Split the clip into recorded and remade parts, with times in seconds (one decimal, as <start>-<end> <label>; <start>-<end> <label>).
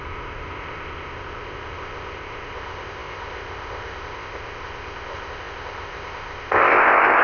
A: 0.0-7.2 remade